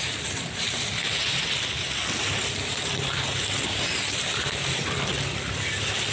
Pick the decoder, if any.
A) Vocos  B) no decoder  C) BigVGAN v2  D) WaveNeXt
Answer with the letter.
B